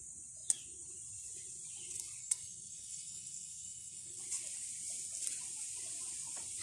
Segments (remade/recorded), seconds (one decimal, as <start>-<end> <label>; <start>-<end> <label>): 0.0-2.2 recorded; 2.2-4.2 remade; 4.2-6.6 recorded